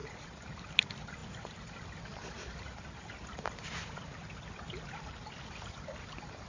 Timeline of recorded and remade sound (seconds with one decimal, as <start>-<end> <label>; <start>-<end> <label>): 0.0-0.7 remade; 0.7-6.5 recorded